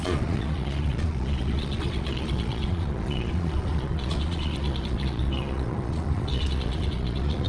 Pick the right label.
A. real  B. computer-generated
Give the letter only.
B